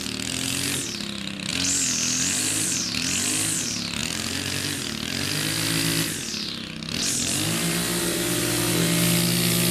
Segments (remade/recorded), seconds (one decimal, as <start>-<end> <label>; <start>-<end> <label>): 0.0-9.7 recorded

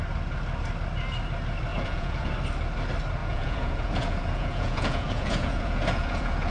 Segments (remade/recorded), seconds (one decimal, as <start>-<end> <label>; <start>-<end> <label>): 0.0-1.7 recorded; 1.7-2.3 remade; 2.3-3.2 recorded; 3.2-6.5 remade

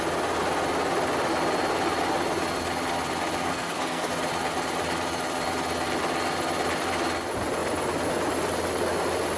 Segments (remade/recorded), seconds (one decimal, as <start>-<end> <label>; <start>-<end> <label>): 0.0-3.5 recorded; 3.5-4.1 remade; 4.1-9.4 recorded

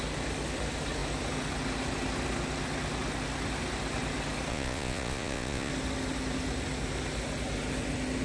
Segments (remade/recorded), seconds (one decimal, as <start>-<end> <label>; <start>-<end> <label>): 0.0-4.5 recorded; 4.5-5.7 remade; 5.7-8.2 recorded